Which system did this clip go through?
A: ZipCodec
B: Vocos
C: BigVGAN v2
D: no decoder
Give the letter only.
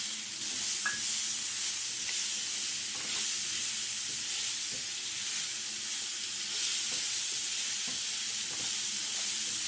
D